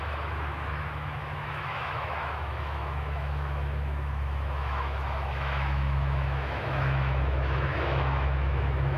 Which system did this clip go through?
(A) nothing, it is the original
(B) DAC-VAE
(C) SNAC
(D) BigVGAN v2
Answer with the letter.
B